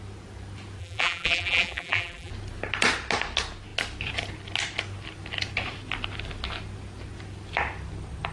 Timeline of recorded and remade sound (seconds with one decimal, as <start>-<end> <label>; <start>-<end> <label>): 0.0-0.8 recorded; 0.8-2.3 remade; 2.3-8.3 recorded